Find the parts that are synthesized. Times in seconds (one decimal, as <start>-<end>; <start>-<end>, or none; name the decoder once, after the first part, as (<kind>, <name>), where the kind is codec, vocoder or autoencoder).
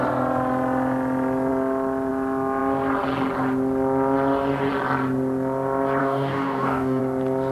6.0-7.0 (codec, DAC)